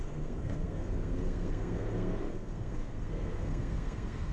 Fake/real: fake